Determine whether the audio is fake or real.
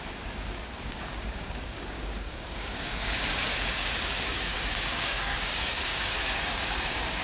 fake